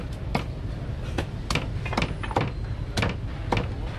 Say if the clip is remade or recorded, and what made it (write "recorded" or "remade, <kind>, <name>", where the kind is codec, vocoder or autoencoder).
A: recorded